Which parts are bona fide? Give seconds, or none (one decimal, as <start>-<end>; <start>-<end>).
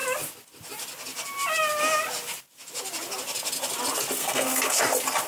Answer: 0.0-4.2; 4.8-5.3